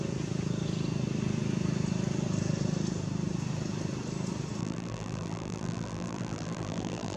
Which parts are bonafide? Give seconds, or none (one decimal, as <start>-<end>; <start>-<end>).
0.0-4.6